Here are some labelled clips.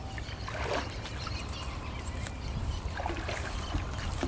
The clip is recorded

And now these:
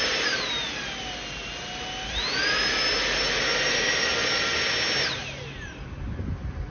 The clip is recorded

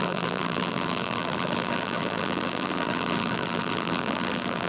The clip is remade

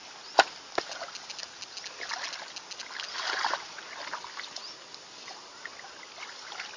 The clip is recorded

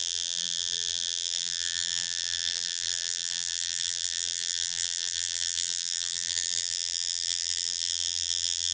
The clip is remade